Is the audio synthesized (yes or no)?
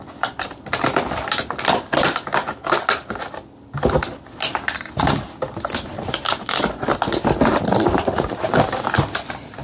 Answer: no